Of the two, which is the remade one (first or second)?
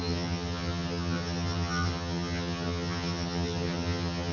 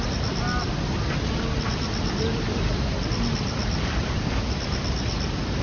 first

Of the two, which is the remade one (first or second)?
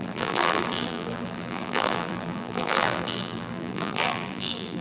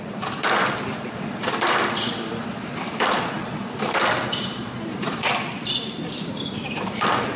first